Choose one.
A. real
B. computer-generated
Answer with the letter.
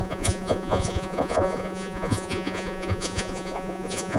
B